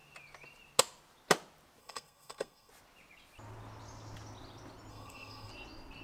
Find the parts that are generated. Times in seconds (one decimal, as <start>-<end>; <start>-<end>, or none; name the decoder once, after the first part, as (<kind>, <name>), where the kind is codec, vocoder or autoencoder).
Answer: 1.8-2.7 (codec, SNAC); 4.9-5.5